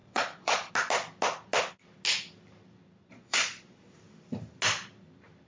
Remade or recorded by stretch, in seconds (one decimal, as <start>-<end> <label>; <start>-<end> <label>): 0.0-0.7 remade; 0.7-3.0 recorded; 3.0-3.8 remade; 3.8-5.5 recorded